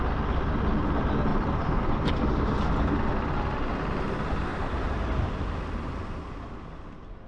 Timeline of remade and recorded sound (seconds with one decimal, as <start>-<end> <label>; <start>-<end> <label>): 0.0-1.3 recorded; 1.3-2.2 remade; 2.2-4.5 recorded; 4.5-6.3 remade; 6.3-7.3 recorded